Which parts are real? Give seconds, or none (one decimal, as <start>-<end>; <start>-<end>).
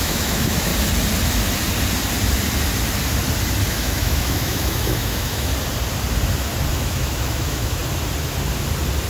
0.7-3.7; 5.5-6.7; 7.8-9.1